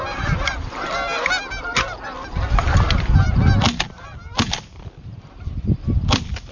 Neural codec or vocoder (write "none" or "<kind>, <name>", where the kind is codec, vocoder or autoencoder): none